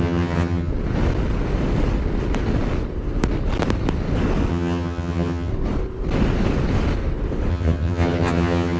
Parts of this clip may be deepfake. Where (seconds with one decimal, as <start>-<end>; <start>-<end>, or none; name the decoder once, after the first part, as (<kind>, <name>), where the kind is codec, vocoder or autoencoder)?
0.0-0.7 (vocoder, HiFi-GAN); 4.5-5.5; 7.5-8.8